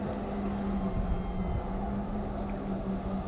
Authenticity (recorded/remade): recorded